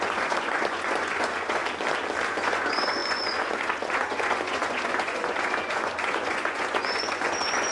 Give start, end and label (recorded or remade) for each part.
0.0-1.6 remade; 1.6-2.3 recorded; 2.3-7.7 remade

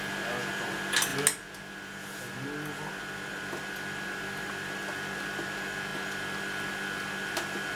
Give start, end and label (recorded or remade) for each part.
0.0-7.8 recorded

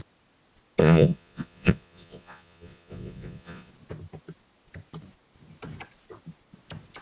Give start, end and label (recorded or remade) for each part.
0.0-0.8 recorded; 0.8-3.7 remade; 3.7-7.0 recorded

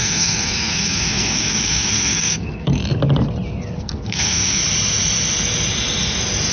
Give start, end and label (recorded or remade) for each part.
0.0-2.8 remade; 2.8-3.8 recorded; 3.8-4.6 remade; 4.6-6.5 recorded

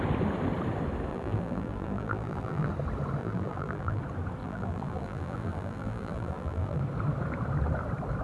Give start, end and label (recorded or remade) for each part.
0.0-1.1 recorded; 1.1-2.7 remade; 2.7-3.2 recorded; 3.2-4.0 remade; 4.0-4.4 recorded; 4.4-6.8 remade; 6.8-8.2 recorded